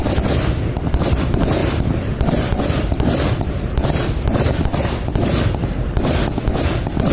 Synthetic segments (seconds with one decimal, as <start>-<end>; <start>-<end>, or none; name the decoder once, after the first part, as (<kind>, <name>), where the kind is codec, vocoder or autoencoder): none